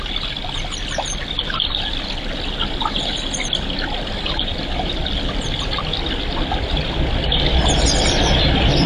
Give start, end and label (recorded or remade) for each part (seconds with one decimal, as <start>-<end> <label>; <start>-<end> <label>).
0.0-8.9 recorded